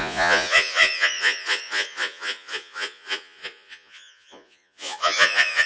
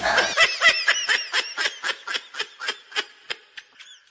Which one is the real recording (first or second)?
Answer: second